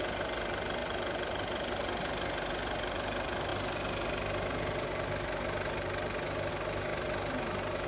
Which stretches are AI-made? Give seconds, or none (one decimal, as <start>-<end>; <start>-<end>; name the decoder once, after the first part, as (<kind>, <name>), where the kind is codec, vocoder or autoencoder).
none